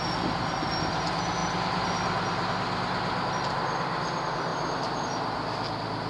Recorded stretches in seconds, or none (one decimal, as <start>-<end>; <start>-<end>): 0.0-6.1